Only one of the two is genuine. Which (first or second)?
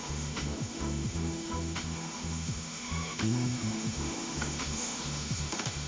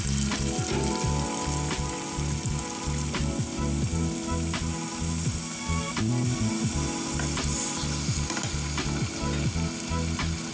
second